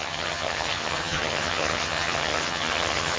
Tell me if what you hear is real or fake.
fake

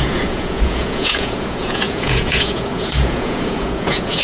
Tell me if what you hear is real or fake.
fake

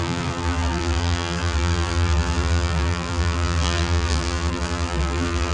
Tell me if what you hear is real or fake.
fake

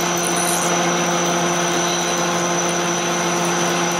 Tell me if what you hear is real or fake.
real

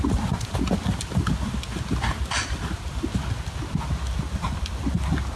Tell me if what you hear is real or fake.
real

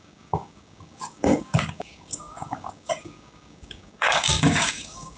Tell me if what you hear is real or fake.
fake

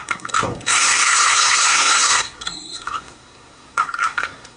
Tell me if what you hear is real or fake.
fake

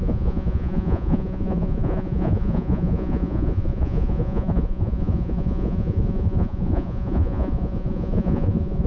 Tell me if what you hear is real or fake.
fake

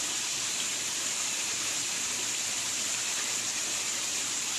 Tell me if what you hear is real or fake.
fake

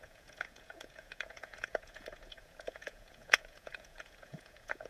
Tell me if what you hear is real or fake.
fake